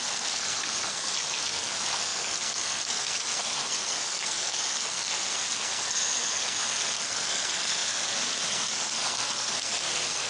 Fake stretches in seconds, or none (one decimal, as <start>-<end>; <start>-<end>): 0.0-10.3